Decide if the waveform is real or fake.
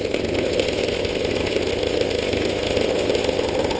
fake